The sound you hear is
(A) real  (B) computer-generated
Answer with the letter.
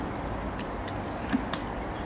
A